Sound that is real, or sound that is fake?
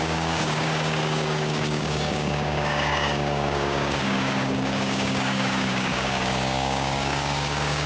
fake